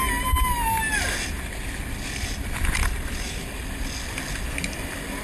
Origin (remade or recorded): recorded